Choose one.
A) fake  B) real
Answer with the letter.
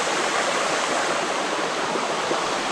B